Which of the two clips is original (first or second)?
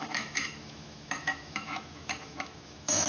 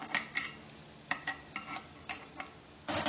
second